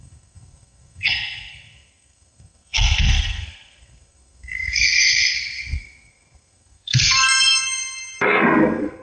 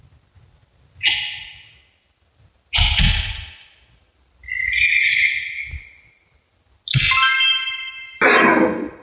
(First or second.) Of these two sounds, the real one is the second